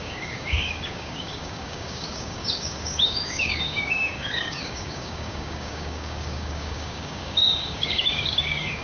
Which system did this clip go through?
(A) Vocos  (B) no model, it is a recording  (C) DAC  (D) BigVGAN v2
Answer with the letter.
C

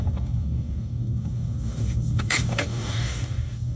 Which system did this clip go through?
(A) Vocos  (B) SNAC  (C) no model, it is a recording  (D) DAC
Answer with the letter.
D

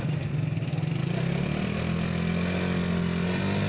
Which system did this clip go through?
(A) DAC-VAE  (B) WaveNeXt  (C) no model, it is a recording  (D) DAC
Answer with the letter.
C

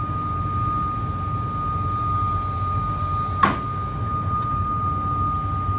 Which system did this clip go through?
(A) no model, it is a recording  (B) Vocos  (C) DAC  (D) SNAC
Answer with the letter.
A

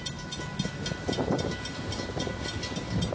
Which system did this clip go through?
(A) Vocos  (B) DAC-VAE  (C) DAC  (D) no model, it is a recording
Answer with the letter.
D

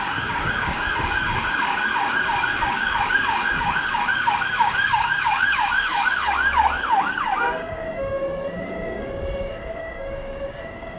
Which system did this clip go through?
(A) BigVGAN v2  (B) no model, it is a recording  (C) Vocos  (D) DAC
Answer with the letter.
D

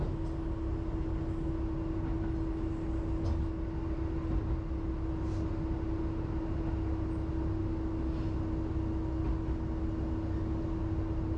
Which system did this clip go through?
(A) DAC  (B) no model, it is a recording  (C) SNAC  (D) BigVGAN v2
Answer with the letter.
B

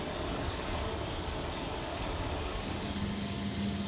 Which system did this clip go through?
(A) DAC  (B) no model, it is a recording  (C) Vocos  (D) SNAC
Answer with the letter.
A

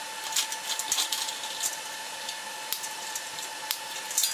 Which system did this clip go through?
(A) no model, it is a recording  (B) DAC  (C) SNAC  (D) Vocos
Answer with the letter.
A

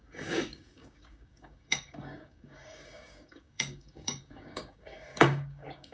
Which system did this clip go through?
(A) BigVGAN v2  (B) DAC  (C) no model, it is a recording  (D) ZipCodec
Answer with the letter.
B